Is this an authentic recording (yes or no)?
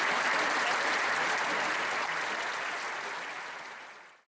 yes